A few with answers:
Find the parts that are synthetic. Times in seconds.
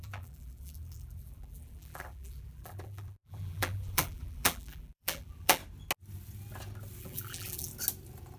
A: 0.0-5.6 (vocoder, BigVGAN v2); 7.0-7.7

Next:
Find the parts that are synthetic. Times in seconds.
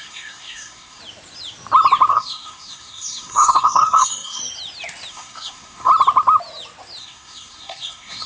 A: 0.0-1.0 (codec, SNAC); 2.1-4.4; 5.1-5.9; 7.0-8.3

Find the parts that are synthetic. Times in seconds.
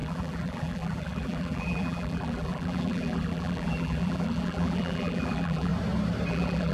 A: 0.0-5.7 (vocoder, BigVGAN v2); 6.3-6.7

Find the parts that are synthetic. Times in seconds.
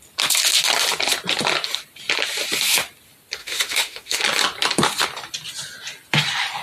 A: 3.4-4.2 (autoencoder, DAC-VAE)